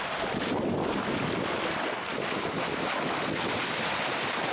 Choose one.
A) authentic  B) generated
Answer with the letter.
A